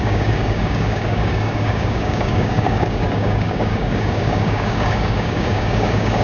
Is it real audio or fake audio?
fake